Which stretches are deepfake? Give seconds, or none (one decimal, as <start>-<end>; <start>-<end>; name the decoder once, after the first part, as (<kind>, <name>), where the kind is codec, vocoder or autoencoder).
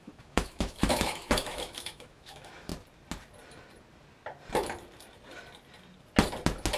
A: 0.0-2.7 (autoencoder, DAC-VAE)